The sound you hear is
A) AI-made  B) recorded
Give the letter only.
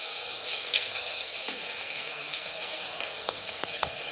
A